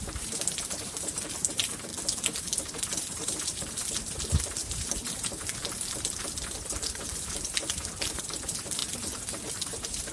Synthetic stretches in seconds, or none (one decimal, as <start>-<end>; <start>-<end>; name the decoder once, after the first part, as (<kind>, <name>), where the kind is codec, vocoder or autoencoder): 0.0-1.9 (vocoder, BigVGAN v2); 2.4-8.8; 9.5-10.1